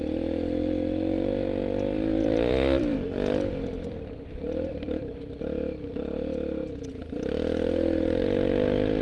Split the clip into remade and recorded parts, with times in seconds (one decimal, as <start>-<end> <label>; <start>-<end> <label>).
0.0-2.2 recorded; 2.2-5.4 remade; 5.4-9.0 recorded